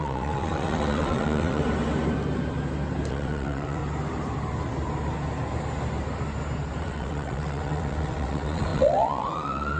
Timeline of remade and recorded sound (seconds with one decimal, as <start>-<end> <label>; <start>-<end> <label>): 0.0-1.6 remade; 1.6-3.1 recorded; 3.1-3.8 remade; 3.8-6.8 recorded; 6.8-9.8 remade